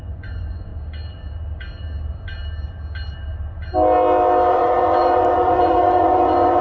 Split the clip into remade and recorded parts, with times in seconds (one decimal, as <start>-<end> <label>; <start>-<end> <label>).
0.0-0.7 remade; 0.7-4.5 recorded; 4.5-6.6 remade